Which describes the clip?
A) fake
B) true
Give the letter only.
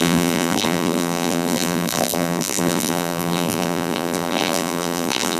A